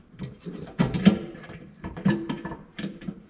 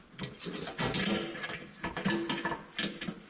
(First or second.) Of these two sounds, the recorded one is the second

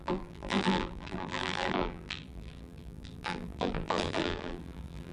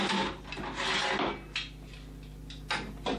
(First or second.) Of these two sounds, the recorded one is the second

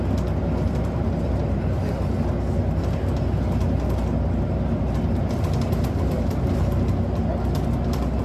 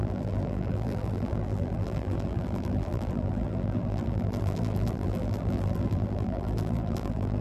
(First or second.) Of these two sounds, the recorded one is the first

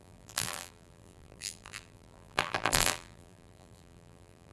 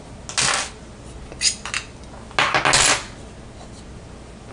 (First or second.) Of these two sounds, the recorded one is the second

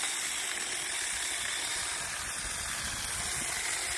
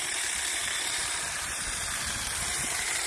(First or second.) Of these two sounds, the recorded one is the first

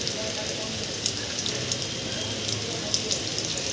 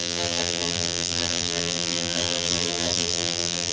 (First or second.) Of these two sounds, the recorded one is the first